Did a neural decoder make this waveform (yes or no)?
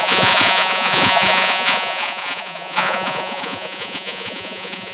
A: yes